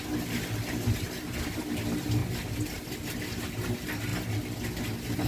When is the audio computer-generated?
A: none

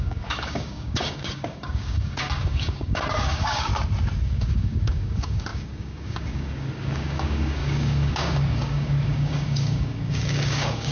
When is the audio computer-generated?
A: 0.0-3.7 (codec, DAC); 4.2-10.9

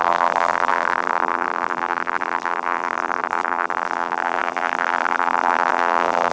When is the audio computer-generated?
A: 0.0-6.3 (vocoder, BigVGAN v2)

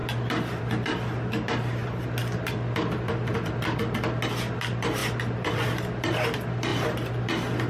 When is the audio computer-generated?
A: none

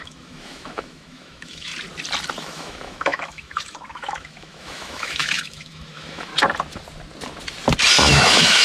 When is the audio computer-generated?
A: 0.0-1.7 (autoencoder, DAC-VAE); 2.4-6.3; 8.1-8.6

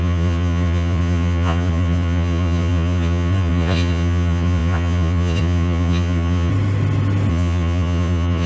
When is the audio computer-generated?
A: 0.0-6.5 (vocoder, Vocos); 7.3-8.5

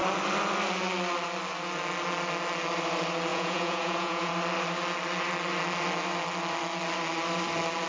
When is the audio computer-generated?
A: 3.3-4.3 (vocoder, Vocos)

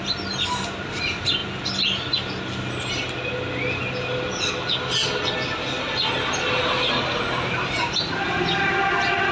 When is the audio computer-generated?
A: none